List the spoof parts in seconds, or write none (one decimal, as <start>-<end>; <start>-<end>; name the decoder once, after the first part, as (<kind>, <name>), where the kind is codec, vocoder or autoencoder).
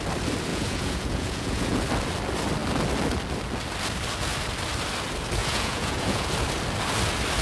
0.5-1.8 (vocoder, Vocos); 5.4-6.3